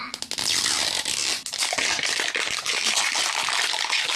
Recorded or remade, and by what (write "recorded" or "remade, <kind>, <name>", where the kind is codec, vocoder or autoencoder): recorded